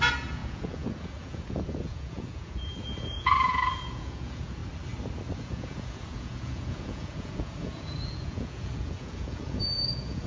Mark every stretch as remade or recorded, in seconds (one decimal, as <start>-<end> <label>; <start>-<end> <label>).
0.0-4.6 remade; 4.6-5.4 recorded; 5.4-10.3 remade

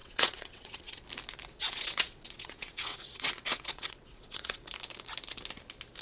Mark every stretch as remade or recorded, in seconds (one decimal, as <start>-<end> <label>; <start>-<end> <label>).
0.0-1.0 remade; 1.0-1.5 recorded; 1.5-4.6 remade; 4.6-6.0 recorded

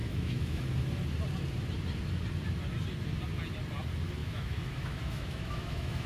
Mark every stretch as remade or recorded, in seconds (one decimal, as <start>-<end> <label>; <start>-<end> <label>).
0.0-0.6 remade; 0.6-4.2 recorded; 4.2-6.1 remade

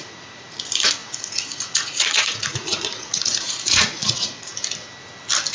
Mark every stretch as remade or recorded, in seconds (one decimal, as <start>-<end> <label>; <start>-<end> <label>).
0.0-4.5 remade; 4.5-5.5 recorded

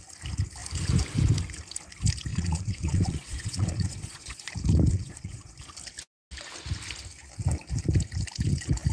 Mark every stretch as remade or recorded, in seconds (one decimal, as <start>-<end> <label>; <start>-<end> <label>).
0.0-2.3 recorded; 2.3-4.5 remade; 4.5-4.9 recorded; 4.9-5.6 remade; 5.6-8.9 recorded

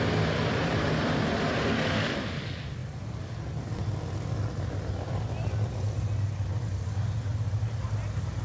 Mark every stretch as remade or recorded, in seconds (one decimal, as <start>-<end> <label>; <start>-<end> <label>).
0.0-0.6 recorded; 0.6-1.7 remade; 1.7-8.4 recorded

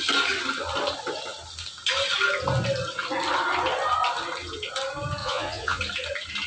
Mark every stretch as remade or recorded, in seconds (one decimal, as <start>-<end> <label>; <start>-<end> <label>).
0.0-5.2 recorded; 5.2-5.8 remade; 5.8-6.5 recorded